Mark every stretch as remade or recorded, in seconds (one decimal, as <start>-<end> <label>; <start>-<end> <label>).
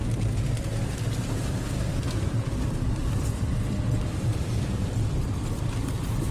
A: 0.0-1.9 recorded; 1.9-5.7 remade; 5.7-6.3 recorded